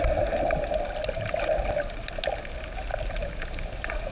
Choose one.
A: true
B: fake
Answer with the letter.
A